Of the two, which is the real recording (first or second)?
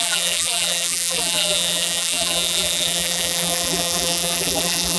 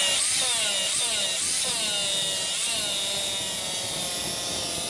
second